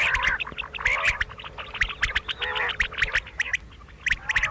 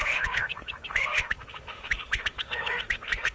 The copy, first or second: second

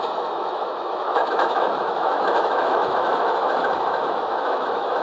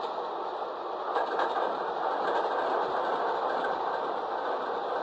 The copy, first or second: first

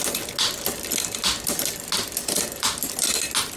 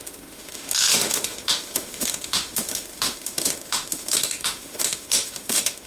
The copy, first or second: second